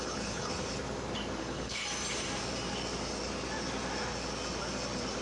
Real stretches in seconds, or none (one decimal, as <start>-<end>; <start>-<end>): 0.5-1.4; 1.8-5.2